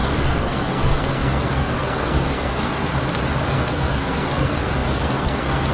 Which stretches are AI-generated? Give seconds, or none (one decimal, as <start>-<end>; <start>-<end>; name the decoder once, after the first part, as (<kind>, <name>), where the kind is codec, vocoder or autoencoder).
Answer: 0.0-2.9 (codec, SNAC); 3.5-5.7